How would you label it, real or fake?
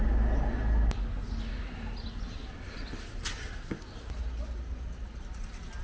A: real